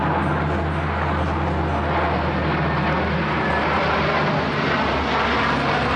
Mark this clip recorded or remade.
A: recorded